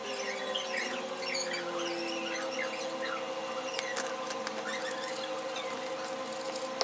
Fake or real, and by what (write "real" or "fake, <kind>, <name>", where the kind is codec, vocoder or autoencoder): real